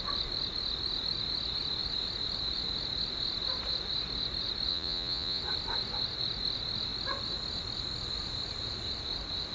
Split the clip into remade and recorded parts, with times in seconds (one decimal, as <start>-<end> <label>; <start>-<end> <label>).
0.0-4.7 recorded; 4.7-5.4 remade; 5.4-9.5 recorded